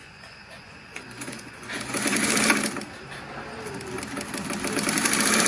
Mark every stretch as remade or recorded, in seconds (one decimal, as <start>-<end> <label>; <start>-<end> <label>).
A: 0.0-2.3 remade; 2.3-5.5 recorded